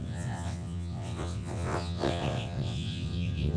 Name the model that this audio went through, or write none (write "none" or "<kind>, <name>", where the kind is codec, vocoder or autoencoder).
vocoder, WaveNeXt